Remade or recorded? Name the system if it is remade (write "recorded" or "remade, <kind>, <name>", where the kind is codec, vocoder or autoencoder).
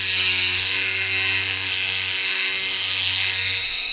remade, codec, SNAC